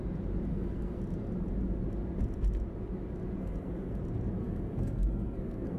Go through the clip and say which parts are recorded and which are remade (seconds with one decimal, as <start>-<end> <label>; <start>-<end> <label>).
0.0-0.5 recorded; 0.5-1.0 remade; 1.0-3.4 recorded; 3.4-4.0 remade; 4.0-4.4 recorded; 4.4-5.8 remade